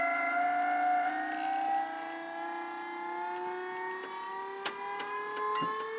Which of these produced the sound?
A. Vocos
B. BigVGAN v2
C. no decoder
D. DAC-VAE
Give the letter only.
C